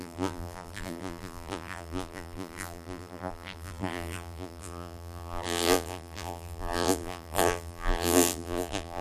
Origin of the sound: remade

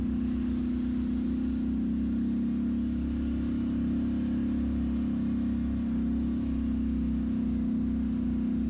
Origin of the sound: recorded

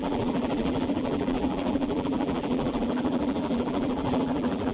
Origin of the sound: remade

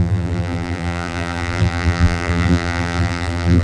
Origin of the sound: remade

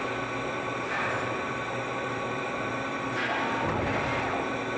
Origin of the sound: recorded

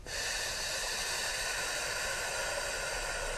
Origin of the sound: recorded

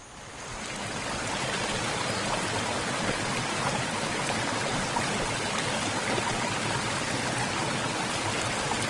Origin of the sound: recorded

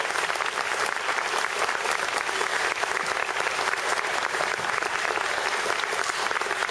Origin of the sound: remade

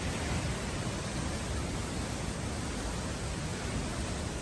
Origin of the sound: recorded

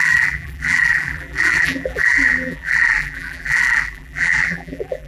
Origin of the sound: remade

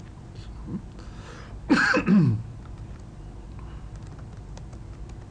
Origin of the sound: recorded